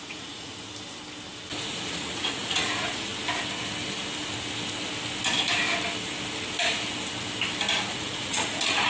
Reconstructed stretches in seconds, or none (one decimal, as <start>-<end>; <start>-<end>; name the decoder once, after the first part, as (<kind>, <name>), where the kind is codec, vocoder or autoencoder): 0.0-0.5 (vocoder, Vocos); 1.7-3.1; 7.9-8.9

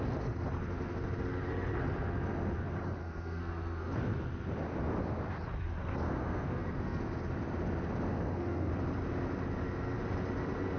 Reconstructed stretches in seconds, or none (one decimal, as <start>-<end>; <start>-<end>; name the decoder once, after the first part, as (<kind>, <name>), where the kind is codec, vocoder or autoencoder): 3.0-3.9 (codec, SNAC); 5.8-7.0; 8.1-8.7

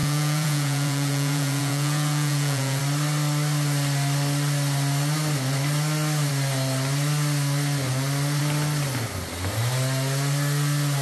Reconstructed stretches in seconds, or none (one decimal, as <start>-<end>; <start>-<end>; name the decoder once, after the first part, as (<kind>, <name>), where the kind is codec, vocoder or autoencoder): 0.0-2.8 (vocoder, Vocos)

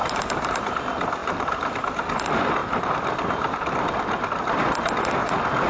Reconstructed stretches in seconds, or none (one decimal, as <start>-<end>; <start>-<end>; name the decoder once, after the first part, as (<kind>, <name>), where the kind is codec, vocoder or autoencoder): 0.0-0.7 (vocoder, BigVGAN v2); 1.2-1.9; 2.6-3.7

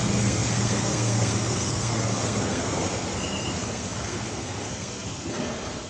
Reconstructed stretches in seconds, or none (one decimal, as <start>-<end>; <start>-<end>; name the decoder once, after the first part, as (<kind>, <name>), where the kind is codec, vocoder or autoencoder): 0.0-5.9 (codec, SNAC)

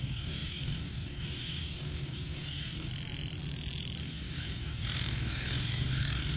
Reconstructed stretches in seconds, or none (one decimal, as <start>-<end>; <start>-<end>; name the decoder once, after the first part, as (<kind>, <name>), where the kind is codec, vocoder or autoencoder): 0.0-2.9 (codec, DAC); 4.0-6.4

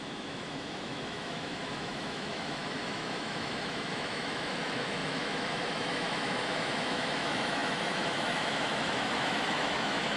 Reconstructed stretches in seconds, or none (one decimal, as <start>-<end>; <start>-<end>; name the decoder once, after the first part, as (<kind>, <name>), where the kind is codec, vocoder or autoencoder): 0.0-10.2 (autoencoder, DAC-VAE)